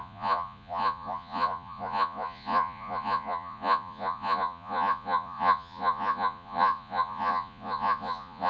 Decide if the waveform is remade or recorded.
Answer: remade